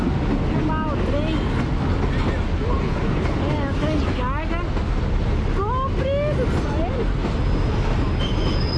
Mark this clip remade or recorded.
recorded